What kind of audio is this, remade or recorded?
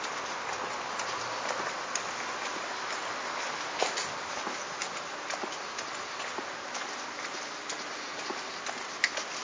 recorded